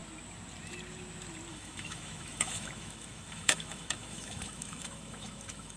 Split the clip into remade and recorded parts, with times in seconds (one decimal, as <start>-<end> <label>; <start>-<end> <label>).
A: 0.0-1.5 recorded; 1.5-5.8 remade